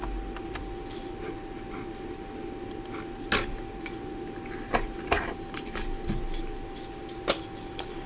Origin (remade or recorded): recorded